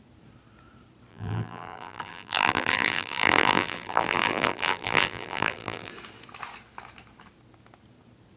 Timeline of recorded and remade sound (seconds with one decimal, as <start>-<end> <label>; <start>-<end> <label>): 0.0-1.1 recorded; 1.1-5.9 remade; 5.9-8.4 recorded